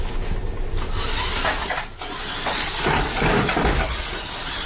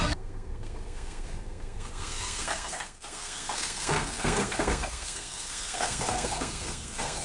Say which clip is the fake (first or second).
second